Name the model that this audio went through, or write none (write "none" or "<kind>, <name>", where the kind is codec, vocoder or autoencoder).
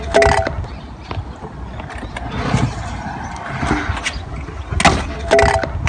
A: none